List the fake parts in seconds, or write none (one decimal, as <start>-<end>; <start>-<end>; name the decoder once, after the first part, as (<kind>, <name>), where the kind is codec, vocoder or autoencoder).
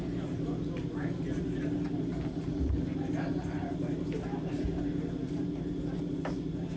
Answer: none